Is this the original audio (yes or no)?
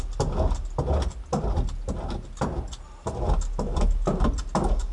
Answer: yes